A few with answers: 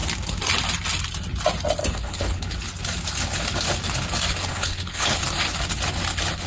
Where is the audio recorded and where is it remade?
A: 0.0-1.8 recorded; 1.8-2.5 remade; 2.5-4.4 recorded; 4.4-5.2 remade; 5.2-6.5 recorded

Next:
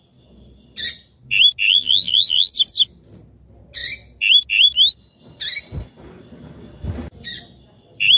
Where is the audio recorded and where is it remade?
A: 0.0-1.7 recorded; 1.7-2.5 remade; 2.5-8.2 recorded